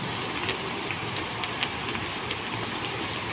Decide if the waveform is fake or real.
real